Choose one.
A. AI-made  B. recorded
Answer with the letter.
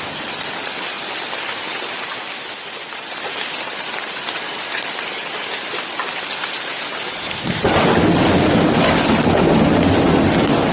B